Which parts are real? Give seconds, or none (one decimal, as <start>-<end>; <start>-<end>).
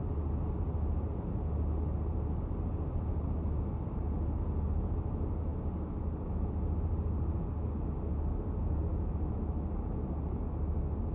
0.0-11.1